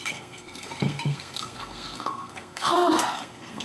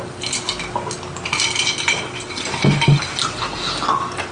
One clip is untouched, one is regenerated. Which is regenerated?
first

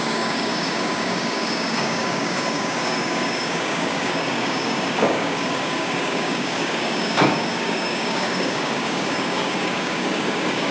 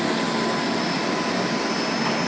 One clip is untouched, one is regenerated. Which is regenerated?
first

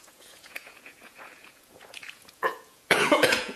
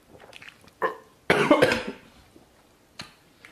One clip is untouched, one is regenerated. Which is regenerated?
first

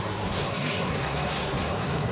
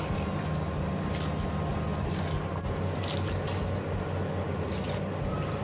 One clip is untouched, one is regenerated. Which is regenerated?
first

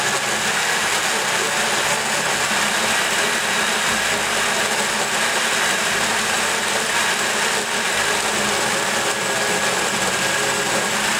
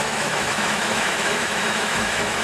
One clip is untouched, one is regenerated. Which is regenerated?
second